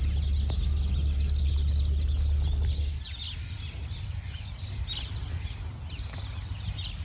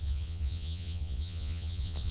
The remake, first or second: second